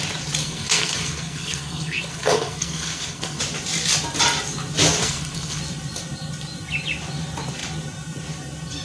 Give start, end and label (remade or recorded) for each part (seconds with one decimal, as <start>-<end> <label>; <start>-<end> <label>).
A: 0.0-0.4 recorded; 0.4-3.4 remade; 3.4-5.0 recorded; 5.0-5.6 remade; 5.6-8.8 recorded